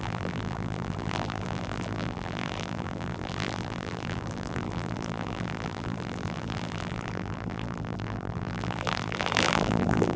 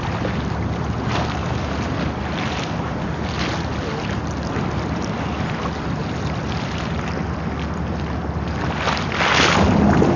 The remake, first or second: first